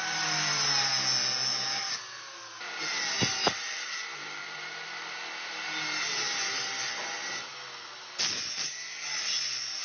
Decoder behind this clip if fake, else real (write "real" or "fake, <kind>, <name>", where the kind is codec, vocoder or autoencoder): real